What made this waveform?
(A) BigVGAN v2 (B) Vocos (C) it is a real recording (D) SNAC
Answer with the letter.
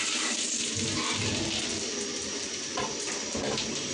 A